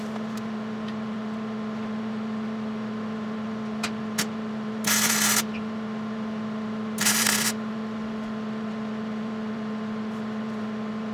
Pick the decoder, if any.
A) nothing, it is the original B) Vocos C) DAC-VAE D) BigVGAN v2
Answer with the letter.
A